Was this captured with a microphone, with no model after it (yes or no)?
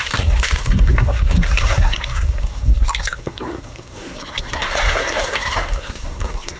no